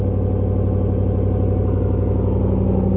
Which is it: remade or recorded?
recorded